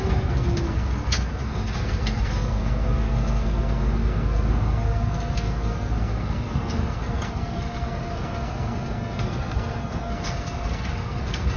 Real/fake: fake